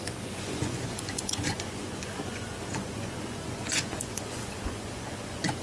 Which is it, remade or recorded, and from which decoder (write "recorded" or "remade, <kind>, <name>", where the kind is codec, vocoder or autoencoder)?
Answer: remade, vocoder, Vocos